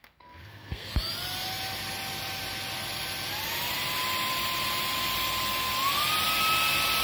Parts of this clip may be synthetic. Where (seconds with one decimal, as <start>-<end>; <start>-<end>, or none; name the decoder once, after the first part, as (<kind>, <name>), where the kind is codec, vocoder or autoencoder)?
0.0-0.9 (codec, SNAC)